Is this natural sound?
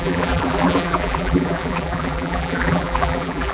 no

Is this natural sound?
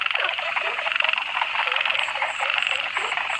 no